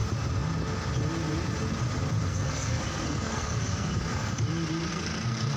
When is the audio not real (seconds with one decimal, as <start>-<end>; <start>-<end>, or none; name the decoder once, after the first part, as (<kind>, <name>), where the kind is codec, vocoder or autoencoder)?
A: 2.2-4.4 (codec, SNAC); 4.9-5.6